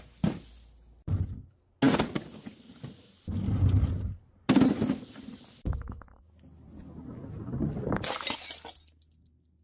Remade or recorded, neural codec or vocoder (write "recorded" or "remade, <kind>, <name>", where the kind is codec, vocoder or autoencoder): recorded